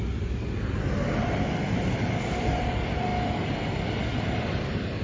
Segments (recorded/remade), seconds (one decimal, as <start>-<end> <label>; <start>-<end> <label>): 0.0-1.2 recorded; 1.2-3.1 remade; 3.1-4.5 recorded; 4.5-5.0 remade